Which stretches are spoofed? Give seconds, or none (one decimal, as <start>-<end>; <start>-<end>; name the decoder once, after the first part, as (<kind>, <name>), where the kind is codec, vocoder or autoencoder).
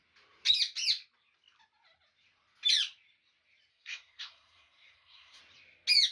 3.7-5.4 (codec, SNAC)